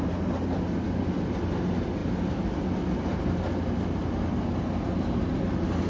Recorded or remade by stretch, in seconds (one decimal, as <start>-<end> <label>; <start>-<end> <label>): 0.0-5.9 recorded